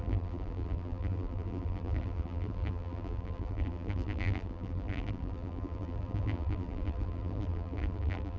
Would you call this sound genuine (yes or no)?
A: no